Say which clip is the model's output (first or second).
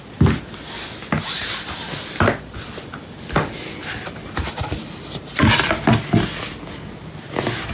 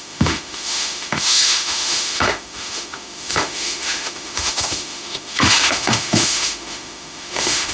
second